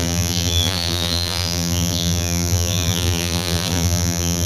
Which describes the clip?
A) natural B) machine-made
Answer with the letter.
B